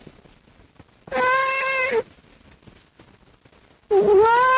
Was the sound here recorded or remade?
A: recorded